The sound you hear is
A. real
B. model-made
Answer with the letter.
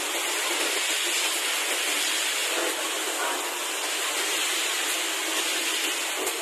A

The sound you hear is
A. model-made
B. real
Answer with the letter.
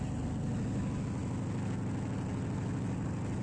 B